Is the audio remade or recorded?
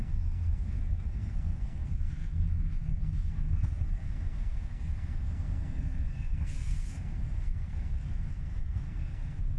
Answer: remade